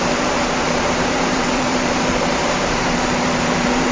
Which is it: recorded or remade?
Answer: remade